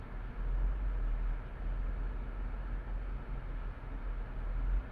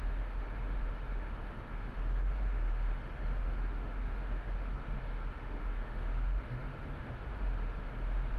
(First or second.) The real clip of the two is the first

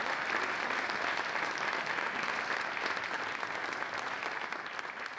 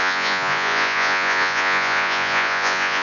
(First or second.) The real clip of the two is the first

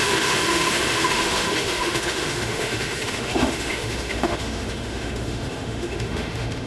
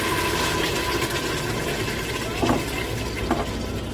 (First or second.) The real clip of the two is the second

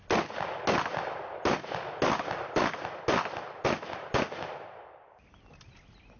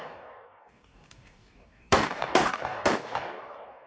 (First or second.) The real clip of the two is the first